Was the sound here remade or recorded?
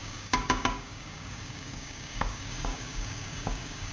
remade